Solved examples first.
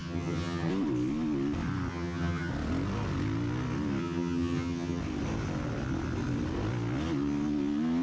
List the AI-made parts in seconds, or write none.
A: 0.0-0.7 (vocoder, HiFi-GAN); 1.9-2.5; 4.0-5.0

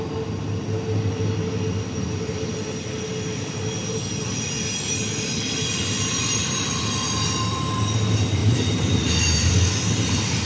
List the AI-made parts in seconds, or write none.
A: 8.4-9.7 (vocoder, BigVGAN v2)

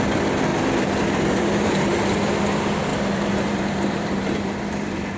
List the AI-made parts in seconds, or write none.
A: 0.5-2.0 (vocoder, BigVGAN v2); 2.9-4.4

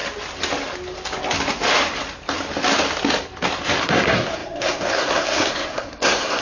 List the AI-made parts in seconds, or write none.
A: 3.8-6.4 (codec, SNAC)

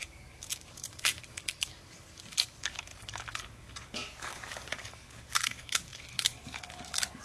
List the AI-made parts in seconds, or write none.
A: 0.0-7.2 (codec, DAC)